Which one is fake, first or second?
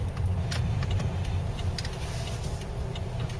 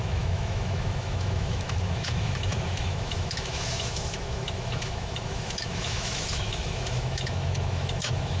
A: second